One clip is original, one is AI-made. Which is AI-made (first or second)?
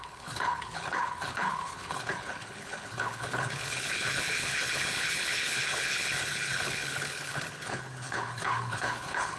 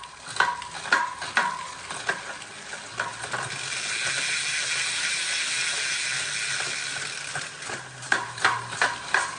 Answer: first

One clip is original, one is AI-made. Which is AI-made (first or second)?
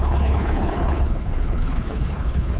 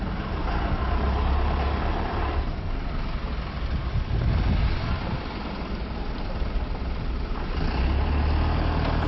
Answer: first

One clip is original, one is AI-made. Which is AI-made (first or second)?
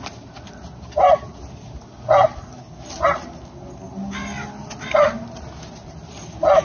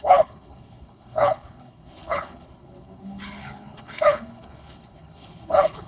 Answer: second